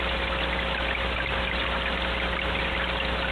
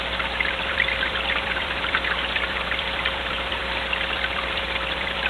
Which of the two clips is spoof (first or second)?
second